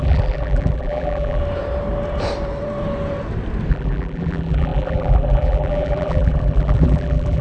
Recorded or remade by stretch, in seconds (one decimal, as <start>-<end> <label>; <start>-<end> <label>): 0.0-1.4 remade; 1.4-3.7 recorded; 3.7-7.4 remade

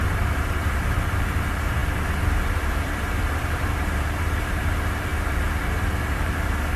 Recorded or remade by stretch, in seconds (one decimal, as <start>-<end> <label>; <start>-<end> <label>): 0.0-6.8 remade

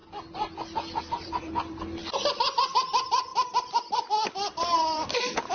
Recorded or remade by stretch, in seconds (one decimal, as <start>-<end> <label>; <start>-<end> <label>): 0.0-1.0 recorded; 1.0-5.5 remade

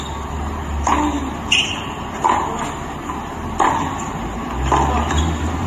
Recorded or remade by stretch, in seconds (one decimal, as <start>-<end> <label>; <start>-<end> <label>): 0.0-5.7 recorded

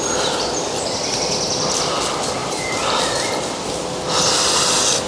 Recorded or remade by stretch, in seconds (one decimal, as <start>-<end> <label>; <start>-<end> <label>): 0.0-5.1 recorded

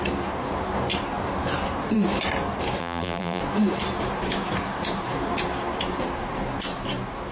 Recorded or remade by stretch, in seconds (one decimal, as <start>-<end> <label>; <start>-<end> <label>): 0.0-2.8 recorded; 2.8-3.4 remade; 3.4-7.3 recorded